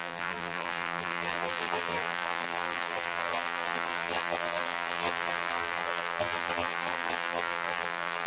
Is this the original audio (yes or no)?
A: no